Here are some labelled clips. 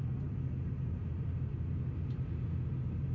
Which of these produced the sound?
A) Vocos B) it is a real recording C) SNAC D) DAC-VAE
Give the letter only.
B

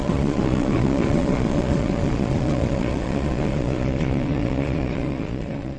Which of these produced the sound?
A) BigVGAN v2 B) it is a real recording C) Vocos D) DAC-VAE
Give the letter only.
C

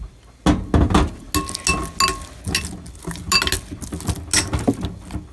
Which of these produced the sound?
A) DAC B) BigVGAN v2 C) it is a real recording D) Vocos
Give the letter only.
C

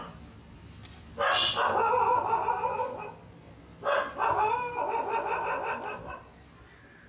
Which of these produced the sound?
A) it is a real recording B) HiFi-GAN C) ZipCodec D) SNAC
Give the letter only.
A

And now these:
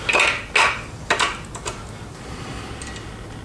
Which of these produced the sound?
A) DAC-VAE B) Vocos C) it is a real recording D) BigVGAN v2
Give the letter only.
C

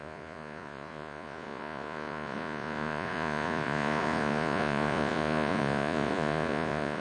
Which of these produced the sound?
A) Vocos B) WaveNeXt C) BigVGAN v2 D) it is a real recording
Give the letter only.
A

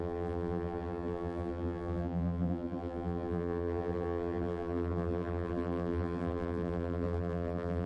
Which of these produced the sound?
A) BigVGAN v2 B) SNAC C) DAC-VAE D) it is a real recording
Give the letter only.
A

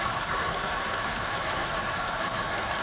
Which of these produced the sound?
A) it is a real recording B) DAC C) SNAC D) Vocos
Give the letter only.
C